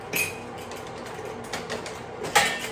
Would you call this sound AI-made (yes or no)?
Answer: no